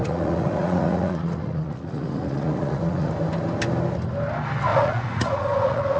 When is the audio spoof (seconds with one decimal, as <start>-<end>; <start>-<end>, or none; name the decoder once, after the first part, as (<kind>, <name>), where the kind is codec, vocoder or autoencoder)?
0.0-3.1 (vocoder, Vocos); 4.7-6.0